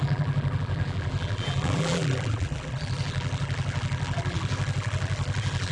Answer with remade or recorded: remade